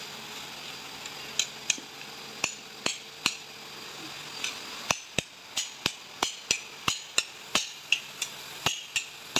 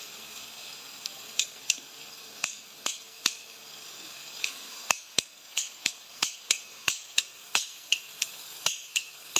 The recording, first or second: first